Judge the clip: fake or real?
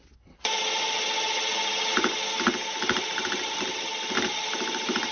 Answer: real